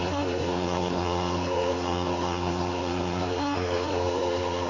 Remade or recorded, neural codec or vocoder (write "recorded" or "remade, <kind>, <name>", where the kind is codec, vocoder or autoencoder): remade, codec, SNAC